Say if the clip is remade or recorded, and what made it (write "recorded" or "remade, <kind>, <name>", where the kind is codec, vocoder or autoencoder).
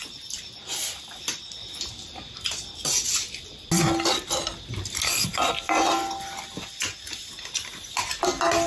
recorded